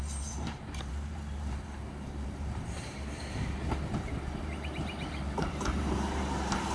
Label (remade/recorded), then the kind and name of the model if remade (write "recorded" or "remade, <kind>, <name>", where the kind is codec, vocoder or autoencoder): remade, vocoder, BigVGAN v2